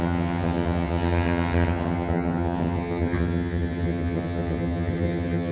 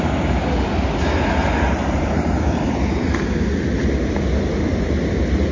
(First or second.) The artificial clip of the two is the first